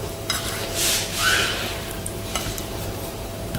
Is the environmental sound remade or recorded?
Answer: remade